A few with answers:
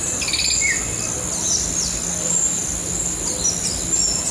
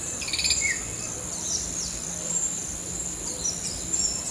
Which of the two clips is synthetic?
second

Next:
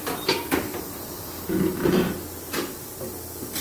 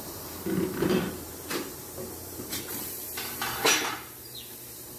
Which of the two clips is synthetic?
second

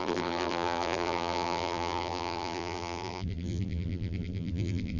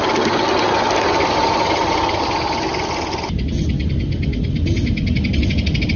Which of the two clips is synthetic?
first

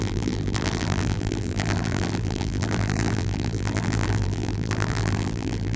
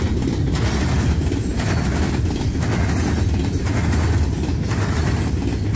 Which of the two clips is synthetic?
first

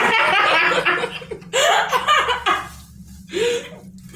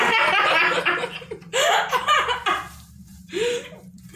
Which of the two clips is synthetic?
second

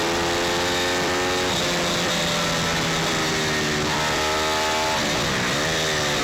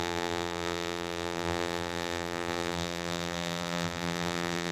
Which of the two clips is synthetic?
second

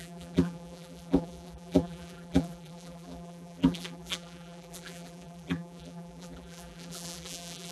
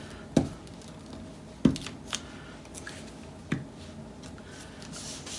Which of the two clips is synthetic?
first